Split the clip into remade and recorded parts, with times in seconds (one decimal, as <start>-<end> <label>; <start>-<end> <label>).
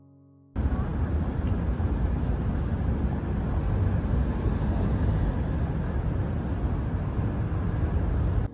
0.0-8.5 recorded